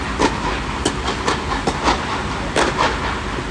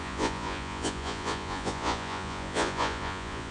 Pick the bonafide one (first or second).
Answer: first